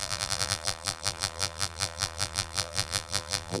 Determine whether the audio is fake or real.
fake